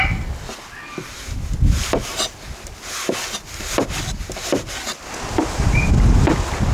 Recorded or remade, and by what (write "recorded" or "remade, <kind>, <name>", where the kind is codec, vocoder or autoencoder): recorded